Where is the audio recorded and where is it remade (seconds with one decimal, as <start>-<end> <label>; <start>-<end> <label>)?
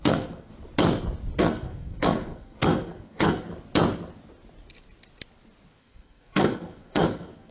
0.0-0.5 remade; 0.5-1.4 recorded; 1.4-3.5 remade; 3.5-5.8 recorded; 5.8-7.5 remade